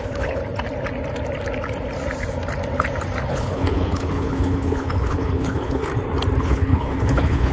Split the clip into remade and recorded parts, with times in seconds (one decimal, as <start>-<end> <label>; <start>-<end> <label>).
0.0-0.4 remade; 0.4-3.3 recorded; 3.3-5.9 remade; 5.9-6.4 recorded; 6.4-7.5 remade